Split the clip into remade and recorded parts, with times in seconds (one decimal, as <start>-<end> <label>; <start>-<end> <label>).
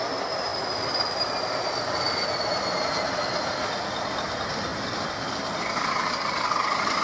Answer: 0.0-7.0 recorded